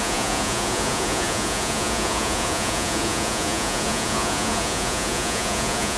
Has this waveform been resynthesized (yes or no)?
yes